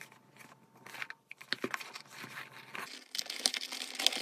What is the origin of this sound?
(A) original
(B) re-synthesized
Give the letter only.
A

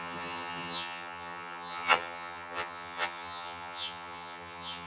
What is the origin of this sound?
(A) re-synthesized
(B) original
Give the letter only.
A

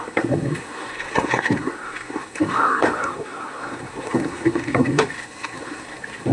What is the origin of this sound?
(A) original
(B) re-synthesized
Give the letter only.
B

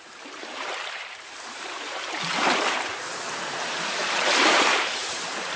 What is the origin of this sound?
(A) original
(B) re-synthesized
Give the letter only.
B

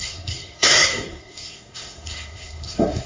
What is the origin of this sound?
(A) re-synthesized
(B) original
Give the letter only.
A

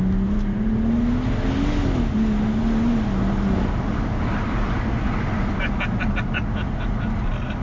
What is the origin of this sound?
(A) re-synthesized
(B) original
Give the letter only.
B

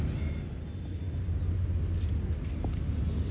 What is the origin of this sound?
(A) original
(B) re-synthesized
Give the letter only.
A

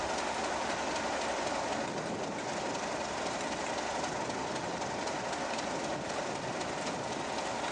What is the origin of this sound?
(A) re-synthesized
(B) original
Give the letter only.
B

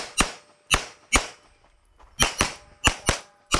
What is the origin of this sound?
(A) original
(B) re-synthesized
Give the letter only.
A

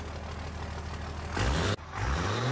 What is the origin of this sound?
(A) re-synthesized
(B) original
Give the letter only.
B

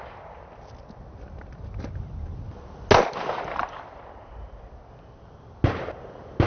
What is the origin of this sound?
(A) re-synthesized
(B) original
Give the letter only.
B